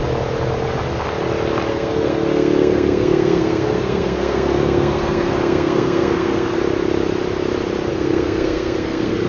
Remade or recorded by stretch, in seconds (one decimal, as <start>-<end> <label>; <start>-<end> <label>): 0.0-1.7 recorded; 1.7-6.6 remade; 6.6-7.9 recorded; 7.9-9.3 remade